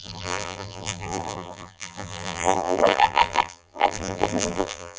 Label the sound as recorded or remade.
remade